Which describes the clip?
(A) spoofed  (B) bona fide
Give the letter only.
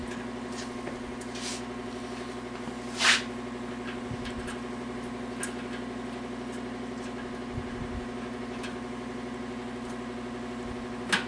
B